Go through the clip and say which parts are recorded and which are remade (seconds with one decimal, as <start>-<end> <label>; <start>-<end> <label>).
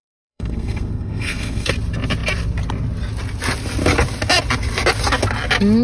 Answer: 0.0-1.7 remade; 1.7-5.8 recorded